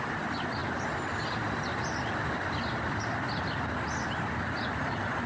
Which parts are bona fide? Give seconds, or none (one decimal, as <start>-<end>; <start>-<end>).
0.0-5.3